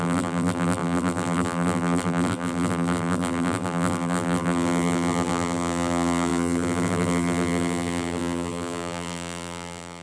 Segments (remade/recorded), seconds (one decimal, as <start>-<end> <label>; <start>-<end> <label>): 0.0-10.0 remade